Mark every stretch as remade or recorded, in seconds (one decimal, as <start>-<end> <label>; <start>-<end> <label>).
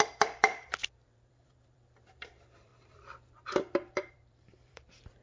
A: 0.0-5.2 remade